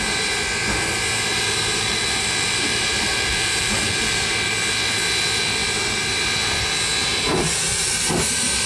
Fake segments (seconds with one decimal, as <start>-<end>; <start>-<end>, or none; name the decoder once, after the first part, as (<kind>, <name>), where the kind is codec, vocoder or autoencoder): 1.3-4.3 (vocoder, BigVGAN v2); 7.0-8.1